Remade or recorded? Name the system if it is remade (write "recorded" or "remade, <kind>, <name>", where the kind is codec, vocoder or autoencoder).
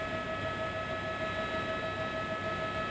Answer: recorded